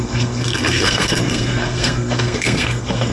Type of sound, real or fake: fake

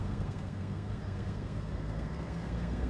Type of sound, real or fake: fake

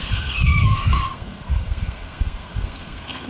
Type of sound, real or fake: fake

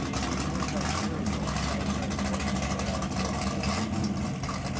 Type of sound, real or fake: real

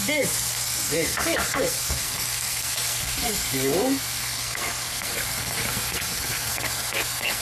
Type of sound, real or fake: fake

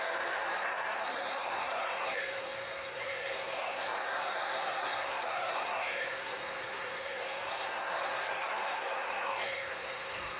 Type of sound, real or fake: fake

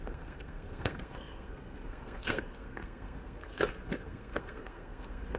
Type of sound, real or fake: fake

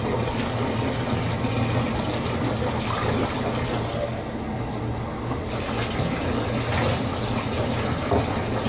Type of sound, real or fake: real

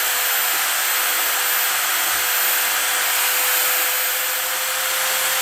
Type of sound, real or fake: real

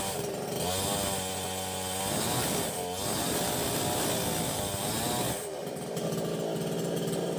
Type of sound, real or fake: real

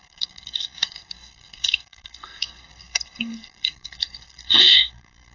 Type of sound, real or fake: fake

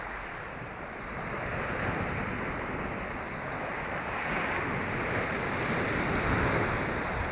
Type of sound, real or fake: real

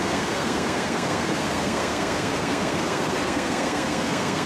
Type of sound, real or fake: fake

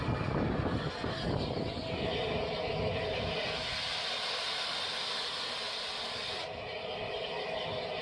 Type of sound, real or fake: real